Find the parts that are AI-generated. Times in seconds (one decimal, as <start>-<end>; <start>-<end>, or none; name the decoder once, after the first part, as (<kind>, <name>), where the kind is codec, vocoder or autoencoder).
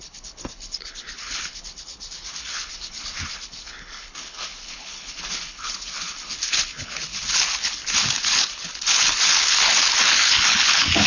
0.0-11.1 (codec, HILCodec)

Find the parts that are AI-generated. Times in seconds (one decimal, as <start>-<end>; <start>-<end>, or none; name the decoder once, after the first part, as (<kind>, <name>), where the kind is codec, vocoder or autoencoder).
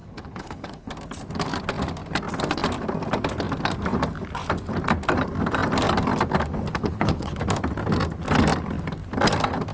0.0-0.9 (codec, HILCodec); 6.7-7.4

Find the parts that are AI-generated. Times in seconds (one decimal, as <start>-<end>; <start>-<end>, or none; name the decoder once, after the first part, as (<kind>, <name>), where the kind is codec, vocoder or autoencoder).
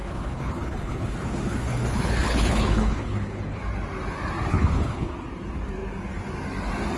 0.0-3.6 (codec, HILCodec); 4.5-5.1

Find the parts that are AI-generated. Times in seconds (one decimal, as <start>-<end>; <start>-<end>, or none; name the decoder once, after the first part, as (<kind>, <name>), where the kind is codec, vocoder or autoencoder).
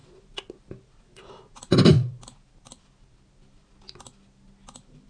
none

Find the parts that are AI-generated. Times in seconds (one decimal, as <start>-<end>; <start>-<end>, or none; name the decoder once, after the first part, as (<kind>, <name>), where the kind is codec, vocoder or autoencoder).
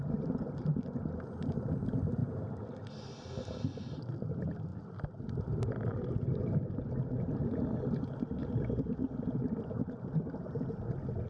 none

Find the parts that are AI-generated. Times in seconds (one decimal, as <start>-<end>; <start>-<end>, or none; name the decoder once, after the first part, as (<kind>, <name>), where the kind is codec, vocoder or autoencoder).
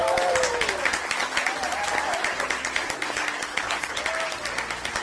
3.5-4.0 (codec, HILCodec)